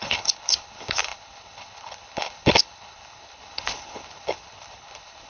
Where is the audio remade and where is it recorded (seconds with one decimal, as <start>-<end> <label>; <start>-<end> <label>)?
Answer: 0.0-5.3 remade